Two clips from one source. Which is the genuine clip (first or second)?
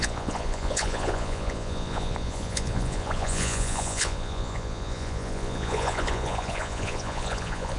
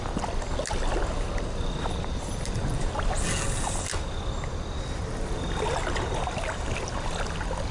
second